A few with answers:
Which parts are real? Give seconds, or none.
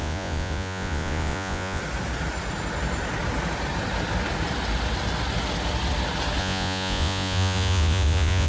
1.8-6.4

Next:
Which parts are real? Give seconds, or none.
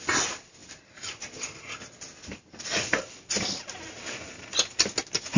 0.0-5.4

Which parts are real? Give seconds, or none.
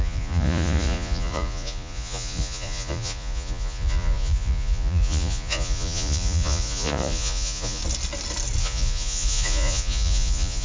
7.8-8.6